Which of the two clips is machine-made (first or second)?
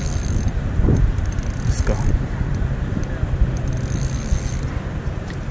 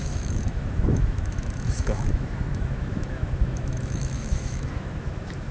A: second